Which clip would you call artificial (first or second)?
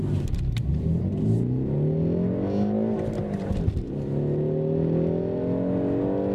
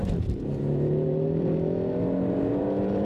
second